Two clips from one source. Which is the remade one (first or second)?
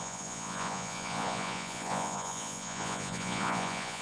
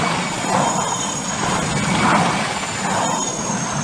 first